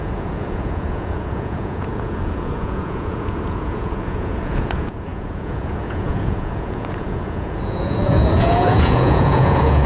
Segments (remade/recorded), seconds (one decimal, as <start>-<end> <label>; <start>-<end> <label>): 0.0-9.9 remade